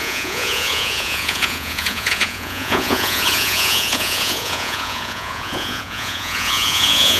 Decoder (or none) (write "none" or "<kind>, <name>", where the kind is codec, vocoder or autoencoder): vocoder, Vocos